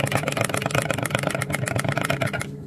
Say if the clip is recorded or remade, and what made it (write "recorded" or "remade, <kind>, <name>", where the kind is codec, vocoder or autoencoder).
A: remade, vocoder, BigVGAN v2